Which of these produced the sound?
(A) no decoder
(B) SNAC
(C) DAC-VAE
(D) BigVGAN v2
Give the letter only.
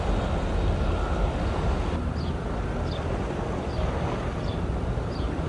A